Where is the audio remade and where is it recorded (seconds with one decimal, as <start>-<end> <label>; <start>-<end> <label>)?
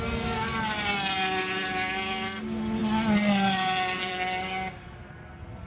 0.0-5.7 recorded